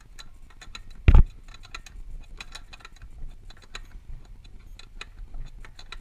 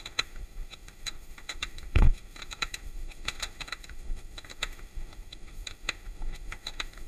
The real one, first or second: first